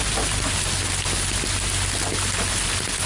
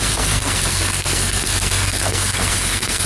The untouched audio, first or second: first